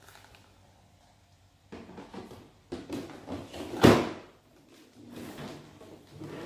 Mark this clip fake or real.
real